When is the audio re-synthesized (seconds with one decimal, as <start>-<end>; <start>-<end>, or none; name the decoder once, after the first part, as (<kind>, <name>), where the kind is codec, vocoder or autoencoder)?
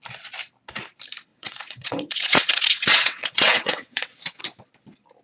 1.3-4.4 (vocoder, WaveNeXt)